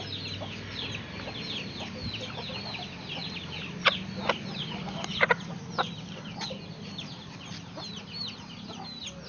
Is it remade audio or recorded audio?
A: recorded